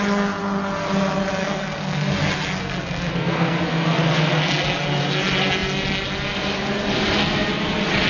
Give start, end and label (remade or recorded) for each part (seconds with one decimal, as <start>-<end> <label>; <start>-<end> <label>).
0.0-1.4 recorded; 1.4-2.1 remade; 2.1-2.6 recorded; 2.6-4.0 remade; 4.0-8.1 recorded